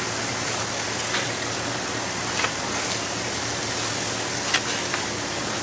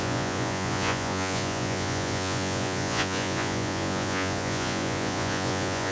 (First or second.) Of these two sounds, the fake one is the second